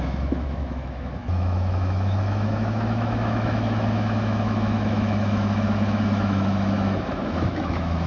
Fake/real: fake